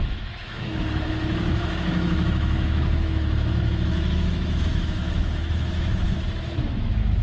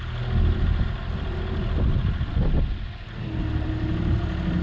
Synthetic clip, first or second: first